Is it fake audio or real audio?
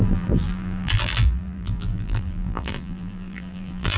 fake